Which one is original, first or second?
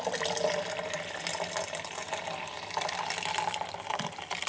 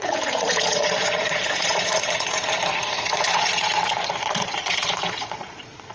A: first